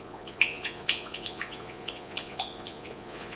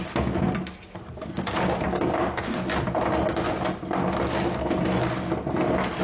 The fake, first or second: first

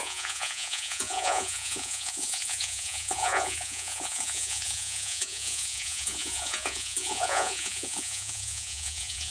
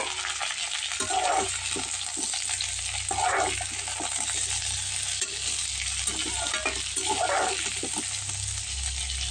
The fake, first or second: first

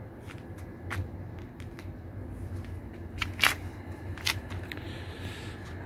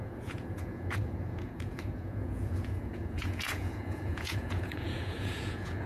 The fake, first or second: second